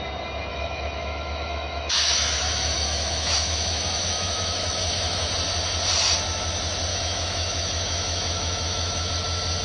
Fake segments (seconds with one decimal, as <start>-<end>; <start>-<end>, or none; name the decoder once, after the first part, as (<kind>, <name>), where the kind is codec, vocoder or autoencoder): 0.5-5.3 (autoencoder, DAC-VAE); 6.9-9.1